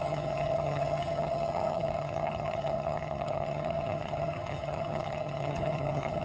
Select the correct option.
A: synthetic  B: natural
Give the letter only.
A